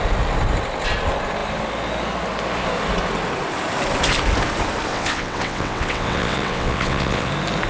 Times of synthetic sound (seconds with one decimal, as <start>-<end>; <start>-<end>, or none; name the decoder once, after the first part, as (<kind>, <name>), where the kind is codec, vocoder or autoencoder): 4.9-7.3 (vocoder, WaveNeXt)